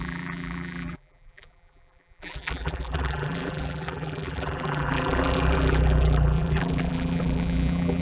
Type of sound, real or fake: fake